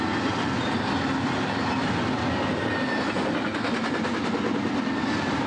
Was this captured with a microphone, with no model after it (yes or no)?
yes